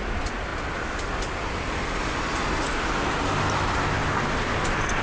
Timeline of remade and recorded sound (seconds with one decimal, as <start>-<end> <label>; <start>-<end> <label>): 0.0-5.0 recorded